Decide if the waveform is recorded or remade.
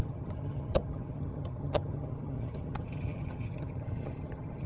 remade